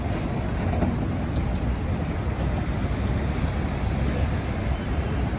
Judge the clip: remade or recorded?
recorded